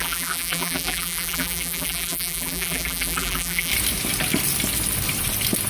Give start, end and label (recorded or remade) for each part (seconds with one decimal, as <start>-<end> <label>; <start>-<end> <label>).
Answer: 0.0-3.7 remade; 3.7-5.7 recorded